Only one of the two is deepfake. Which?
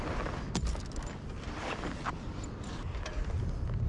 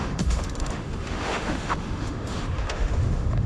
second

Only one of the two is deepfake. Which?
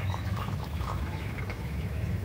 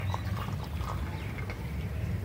first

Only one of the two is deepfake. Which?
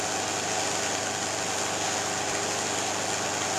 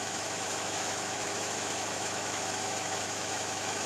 second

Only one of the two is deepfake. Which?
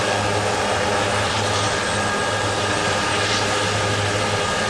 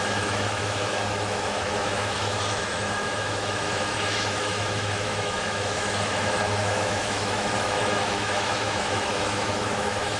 second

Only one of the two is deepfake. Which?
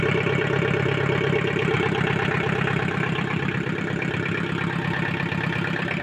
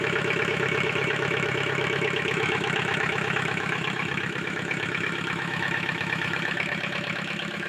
second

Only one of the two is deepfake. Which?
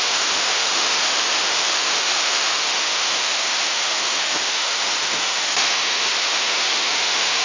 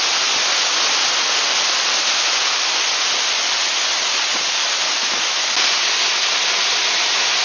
first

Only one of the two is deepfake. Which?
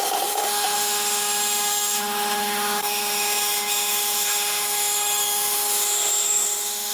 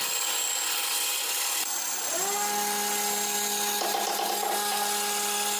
first